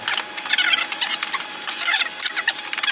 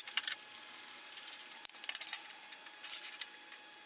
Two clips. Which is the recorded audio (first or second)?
first